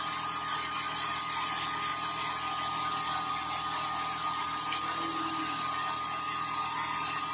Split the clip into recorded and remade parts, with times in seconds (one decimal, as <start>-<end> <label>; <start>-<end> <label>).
0.0-7.3 recorded